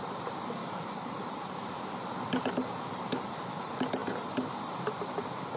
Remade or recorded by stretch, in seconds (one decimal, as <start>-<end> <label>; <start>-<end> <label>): 0.0-0.6 recorded; 0.6-2.1 remade; 2.1-5.6 recorded